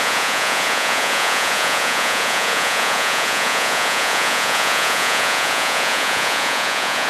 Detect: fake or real fake